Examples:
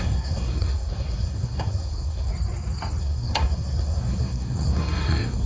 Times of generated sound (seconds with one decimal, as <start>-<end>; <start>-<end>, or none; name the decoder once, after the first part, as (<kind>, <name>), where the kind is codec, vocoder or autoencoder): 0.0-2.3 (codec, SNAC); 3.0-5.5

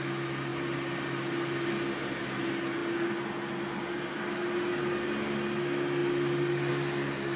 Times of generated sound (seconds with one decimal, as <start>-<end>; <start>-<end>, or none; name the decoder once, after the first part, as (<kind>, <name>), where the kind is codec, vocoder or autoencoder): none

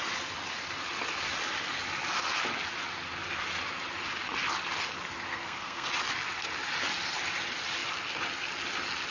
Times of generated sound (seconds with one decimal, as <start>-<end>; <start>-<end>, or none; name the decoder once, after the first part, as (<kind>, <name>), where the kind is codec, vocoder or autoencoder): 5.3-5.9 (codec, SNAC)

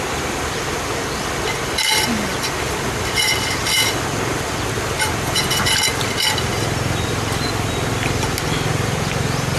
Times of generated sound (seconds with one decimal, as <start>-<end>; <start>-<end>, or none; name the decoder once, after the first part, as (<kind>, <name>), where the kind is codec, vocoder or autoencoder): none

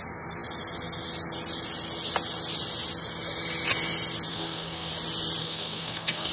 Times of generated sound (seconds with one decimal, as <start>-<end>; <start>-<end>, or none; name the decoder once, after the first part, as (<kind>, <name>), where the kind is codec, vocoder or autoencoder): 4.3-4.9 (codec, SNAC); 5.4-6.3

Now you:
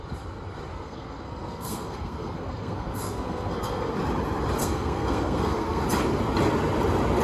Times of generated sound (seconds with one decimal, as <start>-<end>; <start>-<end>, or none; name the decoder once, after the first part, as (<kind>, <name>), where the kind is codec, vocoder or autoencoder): 0.7-3.9 (codec, SNAC); 4.6-5.8

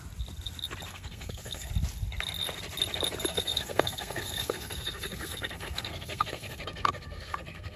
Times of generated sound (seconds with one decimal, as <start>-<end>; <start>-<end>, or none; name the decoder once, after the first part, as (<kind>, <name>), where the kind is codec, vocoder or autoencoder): 0.9-1.7 (codec, SNAC); 3.3-7.8

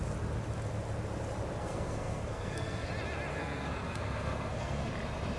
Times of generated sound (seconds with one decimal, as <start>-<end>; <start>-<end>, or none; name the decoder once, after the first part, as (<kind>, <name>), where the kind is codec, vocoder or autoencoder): 1.6-2.9 (codec, SNAC); 3.3-4.9